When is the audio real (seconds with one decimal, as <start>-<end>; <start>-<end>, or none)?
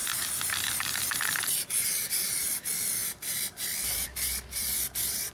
none